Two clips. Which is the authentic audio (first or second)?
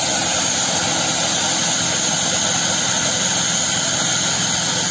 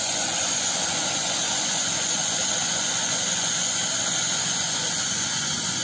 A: first